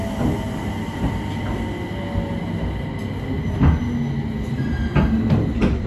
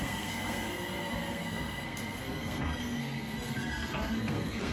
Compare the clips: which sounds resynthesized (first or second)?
second